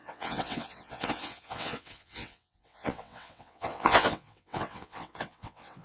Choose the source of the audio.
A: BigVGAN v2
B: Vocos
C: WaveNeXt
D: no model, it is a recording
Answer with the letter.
C